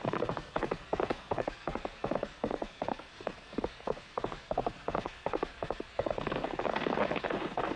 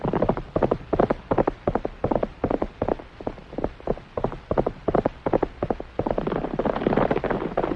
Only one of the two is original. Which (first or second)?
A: second